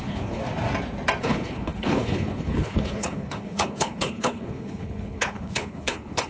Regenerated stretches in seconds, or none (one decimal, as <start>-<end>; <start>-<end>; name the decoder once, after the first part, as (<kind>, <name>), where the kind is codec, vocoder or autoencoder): 0.0-0.4 (codec, HILCodec); 1.2-6.3